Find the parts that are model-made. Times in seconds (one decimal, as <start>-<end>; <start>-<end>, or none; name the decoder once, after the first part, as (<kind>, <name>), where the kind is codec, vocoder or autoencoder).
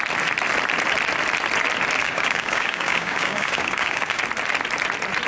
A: 2.0-4.2 (codec, DAC)